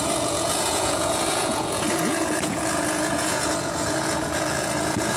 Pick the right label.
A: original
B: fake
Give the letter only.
B